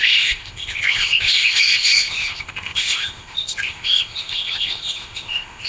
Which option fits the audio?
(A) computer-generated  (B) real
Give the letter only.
A